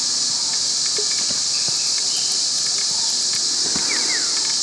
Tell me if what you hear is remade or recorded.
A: recorded